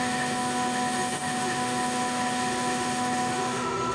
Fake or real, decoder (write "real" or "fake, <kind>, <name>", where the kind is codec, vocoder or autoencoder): fake, autoencoder, DAC-VAE